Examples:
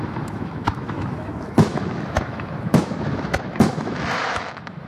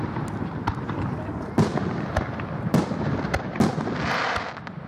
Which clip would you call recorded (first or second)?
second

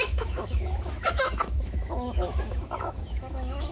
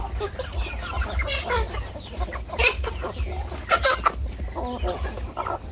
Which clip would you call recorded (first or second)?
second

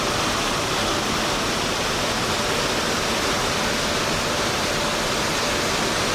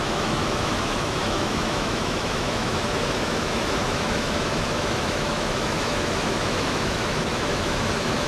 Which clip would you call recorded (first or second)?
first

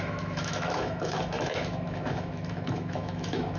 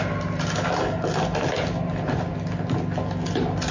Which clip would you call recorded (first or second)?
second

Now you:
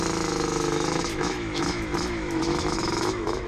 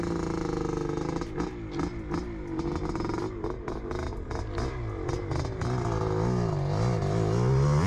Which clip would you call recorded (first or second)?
second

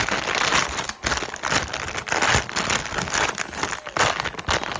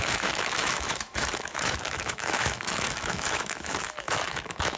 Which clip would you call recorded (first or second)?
first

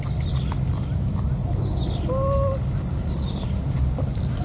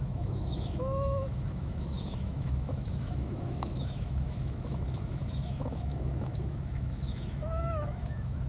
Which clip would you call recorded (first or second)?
first